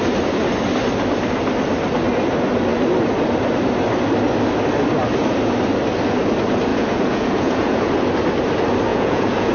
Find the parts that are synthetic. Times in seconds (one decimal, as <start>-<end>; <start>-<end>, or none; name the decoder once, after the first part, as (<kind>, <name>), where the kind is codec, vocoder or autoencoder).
6.7-7.9 (vocoder, Vocos); 8.9-9.5